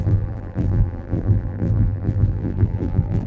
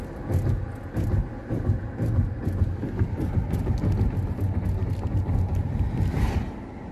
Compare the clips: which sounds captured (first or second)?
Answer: second